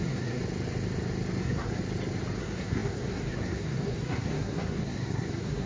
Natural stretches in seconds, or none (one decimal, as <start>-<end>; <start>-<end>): 0.4-1.4; 1.8-2.4